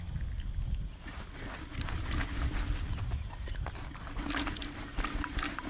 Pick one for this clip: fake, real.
real